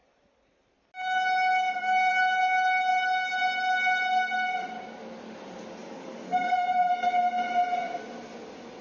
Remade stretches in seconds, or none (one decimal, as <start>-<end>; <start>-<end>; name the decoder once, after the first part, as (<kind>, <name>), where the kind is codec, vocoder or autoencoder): 5.8-6.9 (codec, DAC)